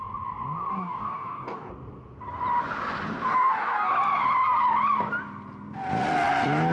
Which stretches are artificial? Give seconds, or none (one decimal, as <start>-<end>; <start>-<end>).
0.7-1.7; 3.3-3.9